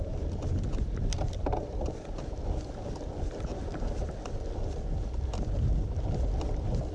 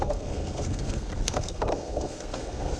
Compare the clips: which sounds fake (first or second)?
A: second